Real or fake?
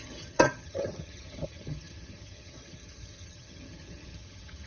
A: fake